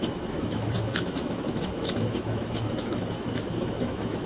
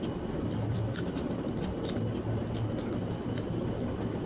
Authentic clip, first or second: second